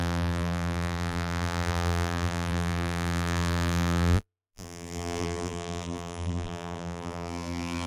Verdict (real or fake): fake